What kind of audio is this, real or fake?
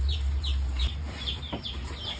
fake